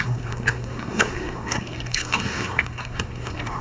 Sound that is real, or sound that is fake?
fake